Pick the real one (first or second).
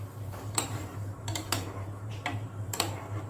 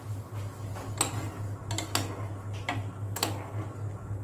second